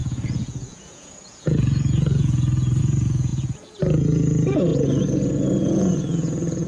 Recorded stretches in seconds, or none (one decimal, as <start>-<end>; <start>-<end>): none